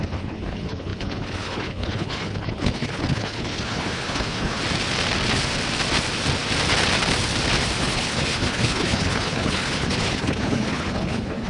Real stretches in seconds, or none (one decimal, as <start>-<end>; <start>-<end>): 4.6-7.8